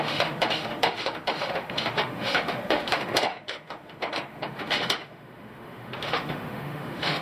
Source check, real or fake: fake